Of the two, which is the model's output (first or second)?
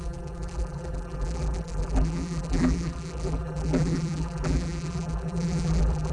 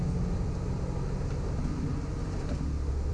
first